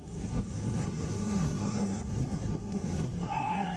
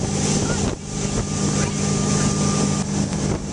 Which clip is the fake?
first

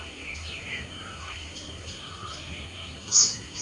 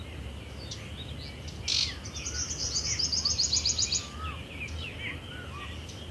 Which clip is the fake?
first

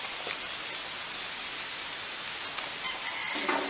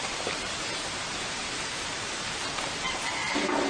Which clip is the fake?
second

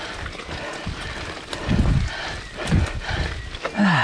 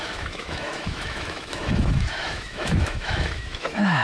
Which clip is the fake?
second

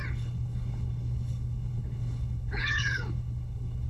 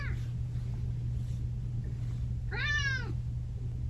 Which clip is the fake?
first